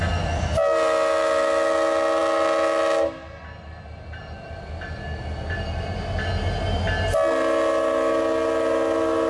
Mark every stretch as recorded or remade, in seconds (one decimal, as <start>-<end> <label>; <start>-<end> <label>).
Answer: 0.0-9.3 recorded